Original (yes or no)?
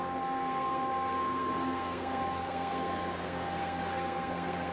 no